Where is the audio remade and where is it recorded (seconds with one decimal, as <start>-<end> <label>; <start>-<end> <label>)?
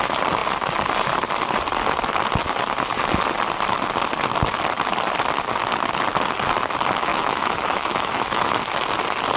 0.0-7.1 recorded; 7.1-8.6 remade; 8.6-9.4 recorded